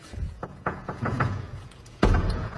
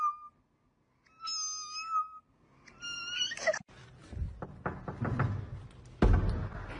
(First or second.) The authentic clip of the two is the second